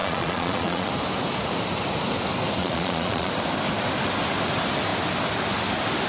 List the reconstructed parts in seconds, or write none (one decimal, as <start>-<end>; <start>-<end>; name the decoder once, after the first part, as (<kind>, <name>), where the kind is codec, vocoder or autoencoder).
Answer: 0.0-0.9 (vocoder, Vocos); 2.6-3.3